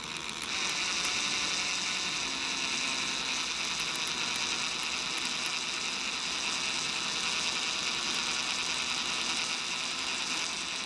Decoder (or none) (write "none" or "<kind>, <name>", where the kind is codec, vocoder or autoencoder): none